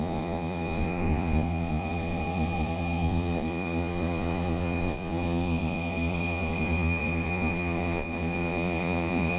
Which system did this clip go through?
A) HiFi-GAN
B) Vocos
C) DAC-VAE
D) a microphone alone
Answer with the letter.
B